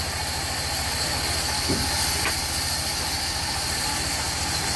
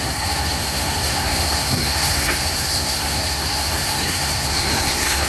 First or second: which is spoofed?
second